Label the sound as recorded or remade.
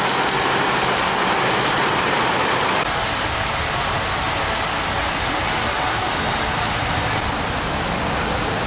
recorded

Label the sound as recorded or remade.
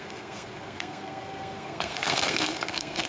remade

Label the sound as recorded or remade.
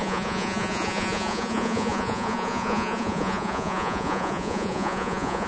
remade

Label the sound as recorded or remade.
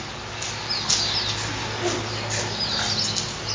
recorded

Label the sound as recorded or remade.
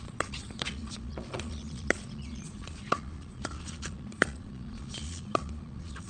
remade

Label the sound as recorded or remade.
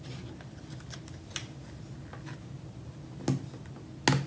recorded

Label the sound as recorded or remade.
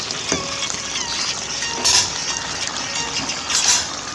recorded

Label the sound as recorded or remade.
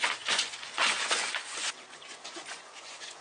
remade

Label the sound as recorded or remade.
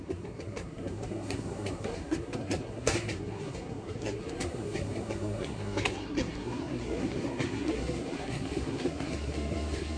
remade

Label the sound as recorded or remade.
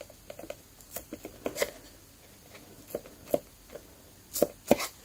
recorded